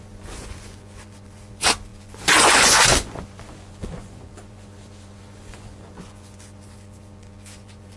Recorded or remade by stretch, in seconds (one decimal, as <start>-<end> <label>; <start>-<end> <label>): 0.0-8.0 remade